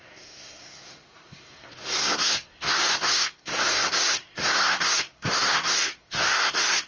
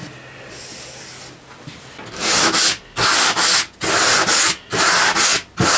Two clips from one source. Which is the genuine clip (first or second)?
second